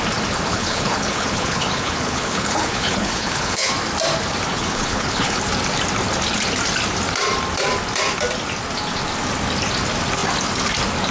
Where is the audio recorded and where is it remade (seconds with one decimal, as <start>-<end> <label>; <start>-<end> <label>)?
0.0-0.5 recorded; 0.5-3.7 remade; 3.7-4.5 recorded; 4.5-5.4 remade; 5.4-11.1 recorded